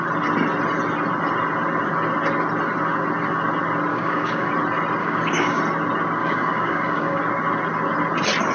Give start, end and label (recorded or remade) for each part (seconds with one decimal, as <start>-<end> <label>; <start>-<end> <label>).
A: 0.0-3.9 recorded; 3.9-4.5 remade; 4.5-5.0 recorded; 5.0-5.6 remade; 5.6-6.2 recorded; 6.2-7.2 remade; 7.2-8.5 recorded